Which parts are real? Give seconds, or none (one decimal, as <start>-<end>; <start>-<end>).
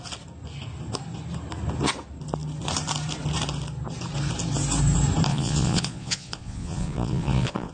0.0-5.3